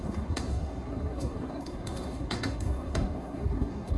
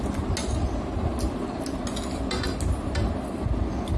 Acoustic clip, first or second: second